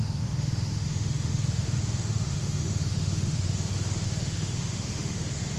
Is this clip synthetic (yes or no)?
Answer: yes